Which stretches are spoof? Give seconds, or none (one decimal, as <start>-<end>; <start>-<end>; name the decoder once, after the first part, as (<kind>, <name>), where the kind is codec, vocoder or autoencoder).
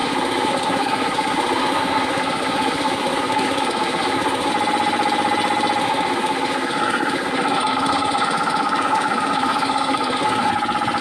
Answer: 0.0-4.5 (codec, SNAC); 5.8-10.5